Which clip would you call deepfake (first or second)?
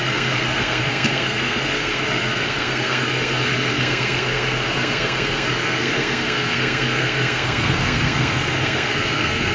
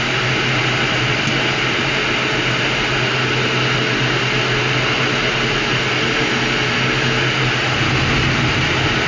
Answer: first